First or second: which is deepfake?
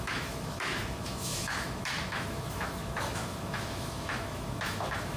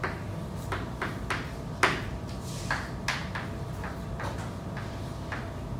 first